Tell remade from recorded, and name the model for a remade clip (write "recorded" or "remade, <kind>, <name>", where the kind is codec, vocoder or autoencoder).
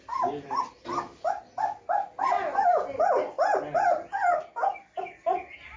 recorded